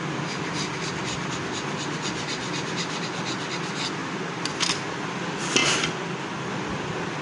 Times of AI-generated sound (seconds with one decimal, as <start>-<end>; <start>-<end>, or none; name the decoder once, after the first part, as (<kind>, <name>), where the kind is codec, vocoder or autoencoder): none